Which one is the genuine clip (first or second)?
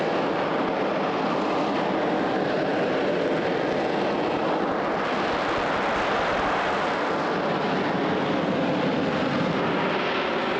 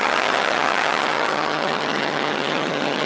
first